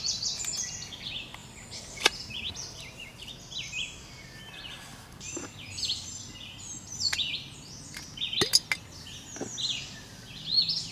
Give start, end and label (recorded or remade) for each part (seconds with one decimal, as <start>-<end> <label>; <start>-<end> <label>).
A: 0.0-1.4 recorded; 1.4-3.2 remade; 3.2-4.9 recorded; 4.9-5.7 remade; 5.7-10.9 recorded